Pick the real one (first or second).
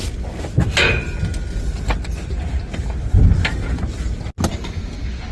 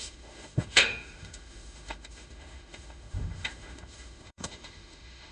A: first